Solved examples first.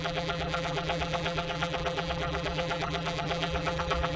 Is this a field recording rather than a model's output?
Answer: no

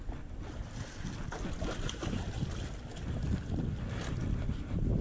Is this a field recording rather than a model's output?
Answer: yes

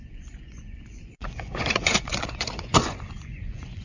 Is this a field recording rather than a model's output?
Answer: no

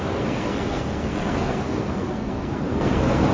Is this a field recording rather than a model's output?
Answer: no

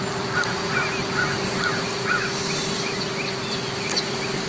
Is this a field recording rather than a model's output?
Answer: yes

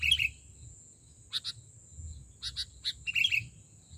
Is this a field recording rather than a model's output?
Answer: yes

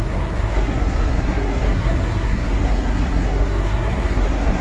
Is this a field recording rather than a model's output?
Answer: no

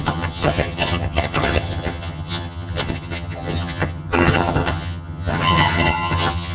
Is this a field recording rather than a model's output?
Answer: no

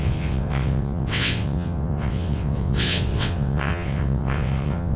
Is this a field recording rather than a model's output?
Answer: no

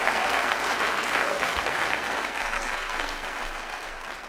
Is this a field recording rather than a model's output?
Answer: no